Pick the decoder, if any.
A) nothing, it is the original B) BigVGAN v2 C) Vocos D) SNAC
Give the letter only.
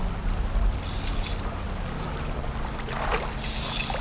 A